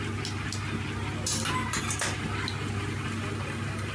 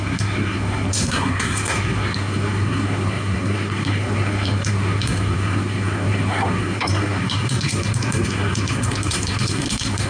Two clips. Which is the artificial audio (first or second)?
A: second